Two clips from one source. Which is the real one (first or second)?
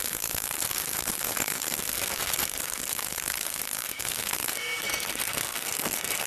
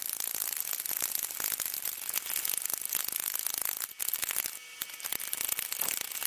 second